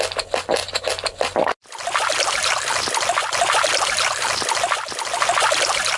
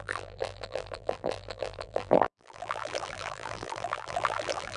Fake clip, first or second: second